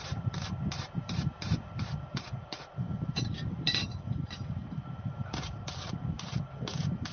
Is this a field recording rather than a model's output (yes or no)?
no